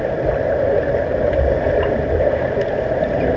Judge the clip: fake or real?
real